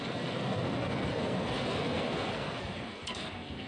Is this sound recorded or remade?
remade